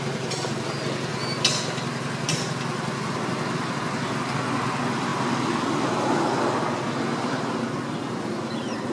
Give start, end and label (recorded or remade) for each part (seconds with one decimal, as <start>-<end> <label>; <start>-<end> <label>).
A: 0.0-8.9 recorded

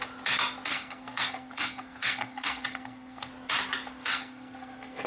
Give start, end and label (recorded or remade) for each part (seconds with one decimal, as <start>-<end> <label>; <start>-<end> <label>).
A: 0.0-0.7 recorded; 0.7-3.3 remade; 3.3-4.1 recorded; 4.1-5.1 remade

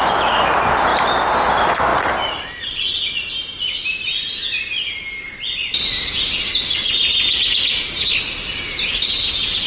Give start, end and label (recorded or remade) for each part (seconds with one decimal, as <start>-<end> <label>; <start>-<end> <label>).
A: 0.0-9.7 recorded

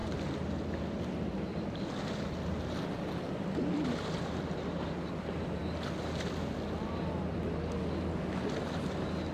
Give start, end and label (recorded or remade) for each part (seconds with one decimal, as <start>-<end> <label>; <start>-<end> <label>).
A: 0.0-9.3 recorded

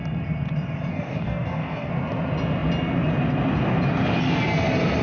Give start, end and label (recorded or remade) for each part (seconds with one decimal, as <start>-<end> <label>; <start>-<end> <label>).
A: 0.0-0.9 recorded; 0.9-1.9 remade; 1.9-5.0 recorded